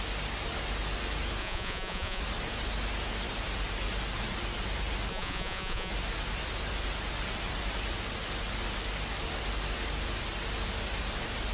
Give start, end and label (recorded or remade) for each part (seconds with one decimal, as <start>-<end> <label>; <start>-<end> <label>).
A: 0.0-1.4 recorded; 1.4-2.2 remade; 2.2-5.1 recorded; 5.1-5.9 remade; 5.9-11.5 recorded